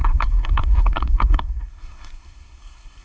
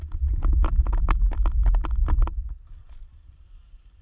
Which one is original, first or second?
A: second